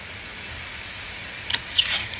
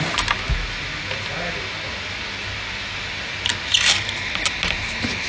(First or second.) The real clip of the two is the second